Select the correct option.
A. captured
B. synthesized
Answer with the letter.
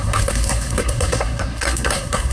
B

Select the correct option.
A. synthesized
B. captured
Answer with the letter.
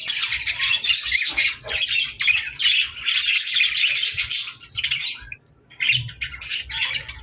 B